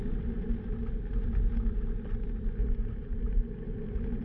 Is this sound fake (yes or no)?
no